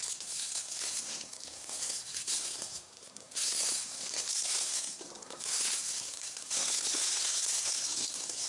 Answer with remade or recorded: remade